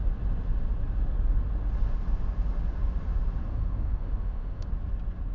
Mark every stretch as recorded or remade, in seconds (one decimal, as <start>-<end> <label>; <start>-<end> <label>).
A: 0.0-3.5 recorded; 3.5-4.7 remade; 4.7-5.3 recorded